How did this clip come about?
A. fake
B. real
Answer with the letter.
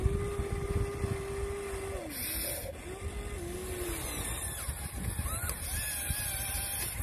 B